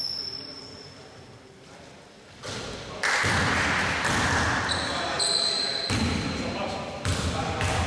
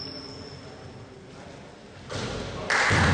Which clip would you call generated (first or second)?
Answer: first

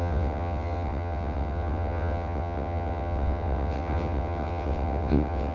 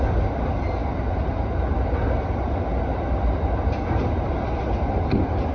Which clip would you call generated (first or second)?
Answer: first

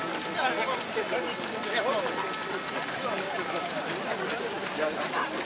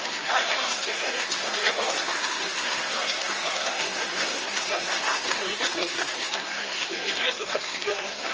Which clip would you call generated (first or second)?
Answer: second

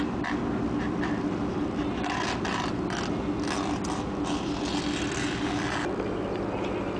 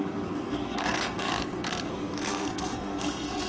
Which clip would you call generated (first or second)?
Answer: second